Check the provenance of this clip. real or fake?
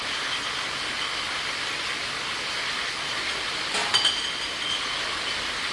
real